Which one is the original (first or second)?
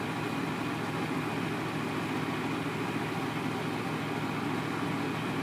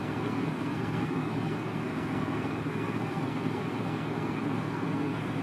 first